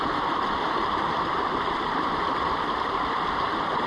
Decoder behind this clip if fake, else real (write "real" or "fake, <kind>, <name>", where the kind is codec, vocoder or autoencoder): real